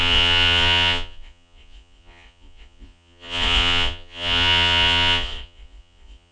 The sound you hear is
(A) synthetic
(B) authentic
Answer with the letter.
A